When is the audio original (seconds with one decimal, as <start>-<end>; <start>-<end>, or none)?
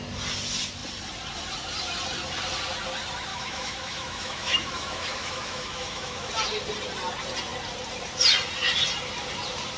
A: 0.0-3.3; 6.3-9.8